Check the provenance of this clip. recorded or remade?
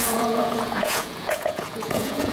remade